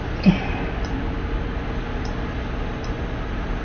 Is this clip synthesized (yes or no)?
no